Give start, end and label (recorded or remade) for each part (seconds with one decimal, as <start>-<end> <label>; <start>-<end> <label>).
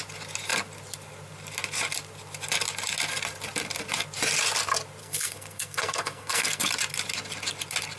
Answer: 0.0-5.0 recorded; 5.0-6.7 remade; 6.7-8.0 recorded